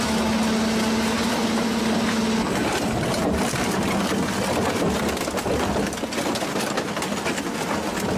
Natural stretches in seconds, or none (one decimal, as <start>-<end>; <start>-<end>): 0.0-8.2